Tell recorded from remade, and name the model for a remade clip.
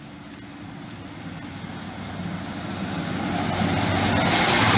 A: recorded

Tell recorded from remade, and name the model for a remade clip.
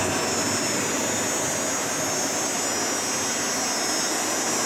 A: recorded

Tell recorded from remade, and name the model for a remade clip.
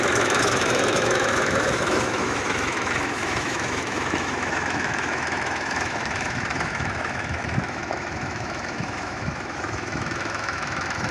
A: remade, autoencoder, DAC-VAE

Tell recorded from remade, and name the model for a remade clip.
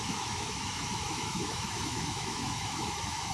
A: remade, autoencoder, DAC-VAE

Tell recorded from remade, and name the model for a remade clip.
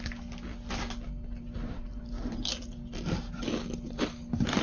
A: recorded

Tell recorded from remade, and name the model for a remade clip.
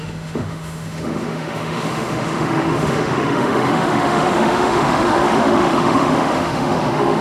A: remade, autoencoder, DAC-VAE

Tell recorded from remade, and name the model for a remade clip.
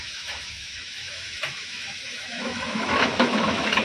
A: remade, autoencoder, DAC-VAE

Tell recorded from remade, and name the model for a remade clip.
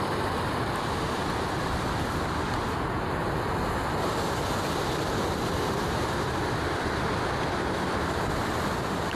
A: recorded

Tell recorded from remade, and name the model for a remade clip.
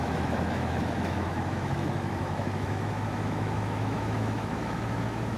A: remade, autoencoder, DAC-VAE